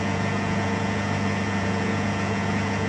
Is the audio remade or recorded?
remade